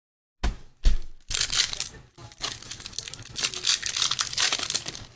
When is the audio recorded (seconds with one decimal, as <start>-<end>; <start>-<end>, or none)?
0.0-5.2